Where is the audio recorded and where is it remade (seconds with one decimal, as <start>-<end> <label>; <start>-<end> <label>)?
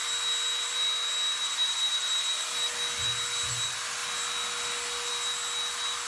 0.0-6.1 recorded